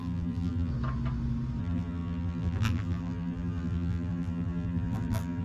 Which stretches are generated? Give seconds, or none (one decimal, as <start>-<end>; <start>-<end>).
0.0-0.7; 1.6-5.4